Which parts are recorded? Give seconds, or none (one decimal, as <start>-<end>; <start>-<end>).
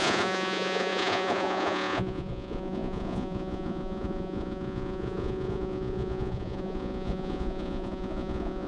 none